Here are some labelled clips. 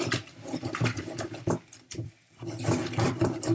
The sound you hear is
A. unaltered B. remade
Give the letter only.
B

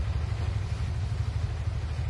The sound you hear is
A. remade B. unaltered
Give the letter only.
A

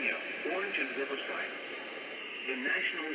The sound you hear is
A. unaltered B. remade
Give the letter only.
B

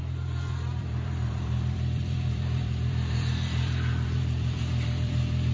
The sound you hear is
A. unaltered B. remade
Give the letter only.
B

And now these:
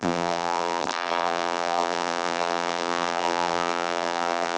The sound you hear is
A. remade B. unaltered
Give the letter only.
A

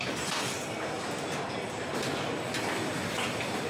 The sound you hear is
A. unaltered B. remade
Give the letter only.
A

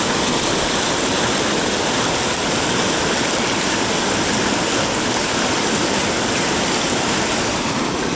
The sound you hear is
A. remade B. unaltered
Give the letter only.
A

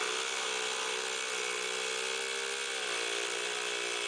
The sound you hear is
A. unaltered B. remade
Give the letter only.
A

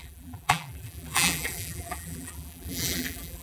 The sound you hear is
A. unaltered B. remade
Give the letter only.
B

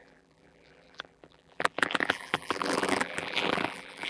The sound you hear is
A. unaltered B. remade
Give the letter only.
B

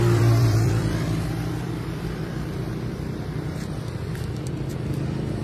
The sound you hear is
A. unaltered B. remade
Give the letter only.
B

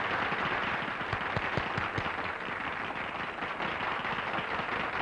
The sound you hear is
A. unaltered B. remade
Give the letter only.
A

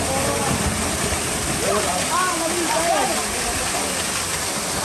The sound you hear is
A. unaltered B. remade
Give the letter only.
A